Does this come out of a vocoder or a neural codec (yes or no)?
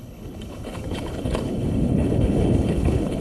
yes